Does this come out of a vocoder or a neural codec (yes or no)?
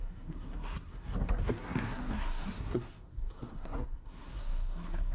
yes